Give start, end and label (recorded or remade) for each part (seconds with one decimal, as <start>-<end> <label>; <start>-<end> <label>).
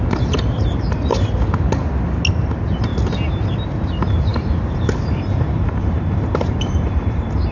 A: 0.0-1.1 remade; 1.1-2.3 recorded; 2.3-2.9 remade; 2.9-3.5 recorded; 3.5-7.5 remade